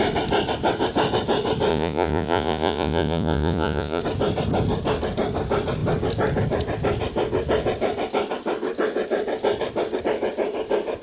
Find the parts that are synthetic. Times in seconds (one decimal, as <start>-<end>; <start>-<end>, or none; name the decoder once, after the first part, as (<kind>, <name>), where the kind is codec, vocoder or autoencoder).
1.7-4.0 (vocoder, Vocos)